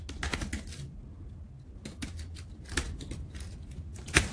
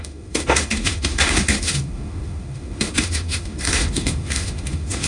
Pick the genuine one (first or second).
first